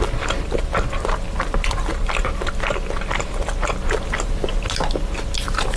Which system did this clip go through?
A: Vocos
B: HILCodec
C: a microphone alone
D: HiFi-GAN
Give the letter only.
C